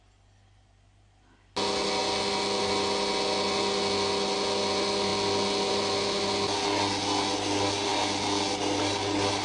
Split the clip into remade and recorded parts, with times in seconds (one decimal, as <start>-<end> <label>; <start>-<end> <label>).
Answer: 0.0-9.4 recorded